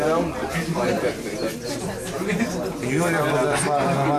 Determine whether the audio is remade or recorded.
recorded